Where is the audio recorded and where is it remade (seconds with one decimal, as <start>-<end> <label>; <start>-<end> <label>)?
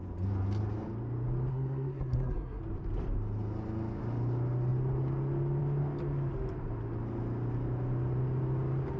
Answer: 0.0-1.5 recorded; 1.5-2.6 remade; 2.6-9.0 recorded